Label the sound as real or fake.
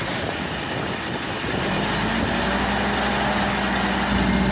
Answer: real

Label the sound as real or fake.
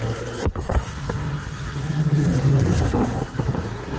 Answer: fake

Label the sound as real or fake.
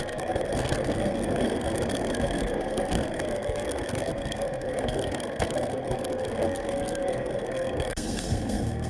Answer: fake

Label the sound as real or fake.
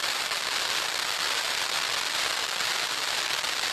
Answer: fake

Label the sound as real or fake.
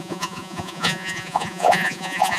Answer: fake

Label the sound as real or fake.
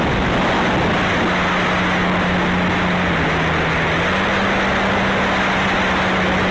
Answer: real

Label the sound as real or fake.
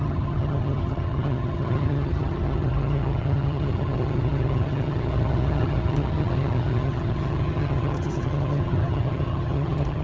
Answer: fake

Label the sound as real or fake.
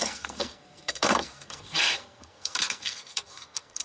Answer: fake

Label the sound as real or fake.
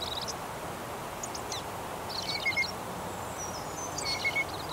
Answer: real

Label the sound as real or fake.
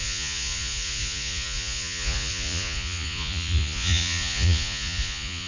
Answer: fake